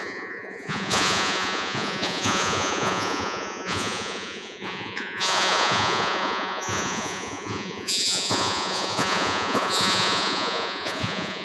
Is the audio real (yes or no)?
no